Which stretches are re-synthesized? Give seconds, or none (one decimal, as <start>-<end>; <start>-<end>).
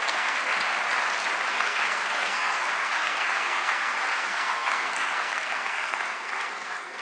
0.0-0.5; 1.5-7.0